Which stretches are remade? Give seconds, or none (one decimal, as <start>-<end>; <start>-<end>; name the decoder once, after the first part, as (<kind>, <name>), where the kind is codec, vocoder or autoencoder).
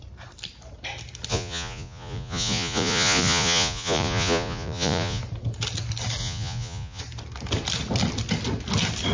1.3-5.2 (vocoder, Vocos); 6.2-7.0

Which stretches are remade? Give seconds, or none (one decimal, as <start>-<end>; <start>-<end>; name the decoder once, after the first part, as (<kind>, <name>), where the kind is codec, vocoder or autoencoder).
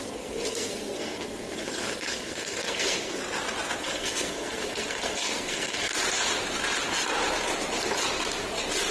0.0-3.2 (codec, SNAC); 3.8-5.9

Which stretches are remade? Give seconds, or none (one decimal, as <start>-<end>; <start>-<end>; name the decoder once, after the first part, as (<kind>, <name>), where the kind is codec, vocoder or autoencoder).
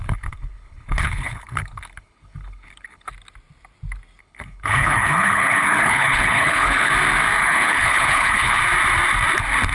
0.0-3.1 (codec, HILCodec); 4.2-6.9; 7.4-8.6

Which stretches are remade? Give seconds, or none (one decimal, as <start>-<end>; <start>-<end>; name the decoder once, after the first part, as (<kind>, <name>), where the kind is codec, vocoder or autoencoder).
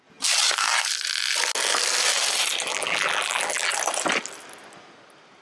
2.7-3.7 (vocoder, BigVGAN v2)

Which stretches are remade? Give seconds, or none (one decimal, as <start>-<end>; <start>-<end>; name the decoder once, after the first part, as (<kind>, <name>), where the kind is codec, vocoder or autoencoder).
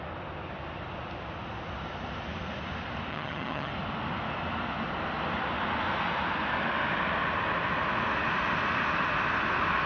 3.1-3.7 (vocoder, HiFi-GAN)